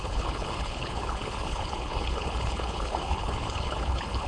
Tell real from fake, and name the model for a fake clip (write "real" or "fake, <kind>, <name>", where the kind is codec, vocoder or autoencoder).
fake, codec, HILCodec